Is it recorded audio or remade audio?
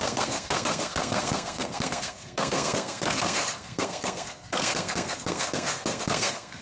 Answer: remade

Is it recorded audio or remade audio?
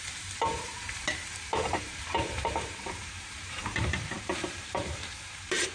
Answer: remade